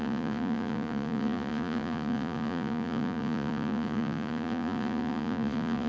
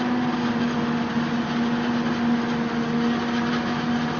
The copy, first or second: first